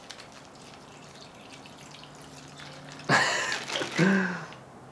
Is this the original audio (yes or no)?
yes